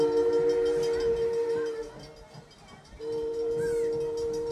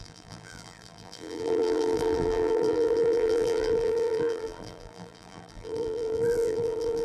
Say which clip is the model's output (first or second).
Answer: second